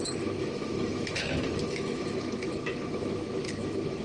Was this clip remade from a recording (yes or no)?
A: yes